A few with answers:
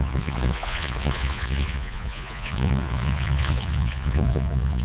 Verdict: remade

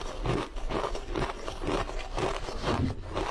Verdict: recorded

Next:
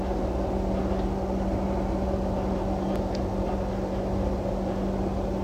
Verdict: recorded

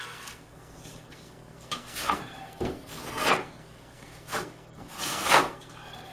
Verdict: remade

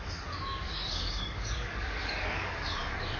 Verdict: remade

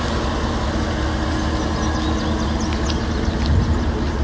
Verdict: recorded